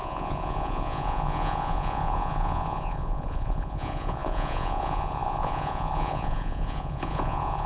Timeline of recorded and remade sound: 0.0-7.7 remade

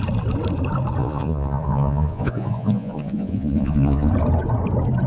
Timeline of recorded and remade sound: 0.0-1.0 recorded; 1.0-4.1 remade; 4.1-5.1 recorded

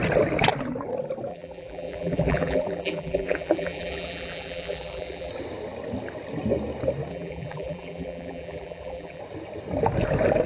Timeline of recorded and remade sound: 0.0-1.3 recorded; 1.3-5.3 remade; 5.3-7.1 recorded; 7.1-9.2 remade; 9.2-10.5 recorded